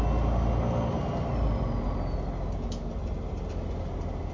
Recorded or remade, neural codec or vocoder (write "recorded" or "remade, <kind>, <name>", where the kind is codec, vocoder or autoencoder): recorded